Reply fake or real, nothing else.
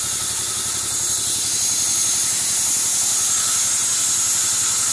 real